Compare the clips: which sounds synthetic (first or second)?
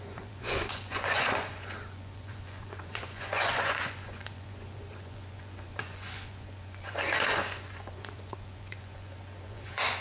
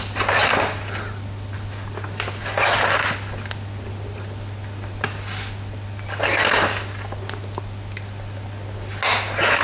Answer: first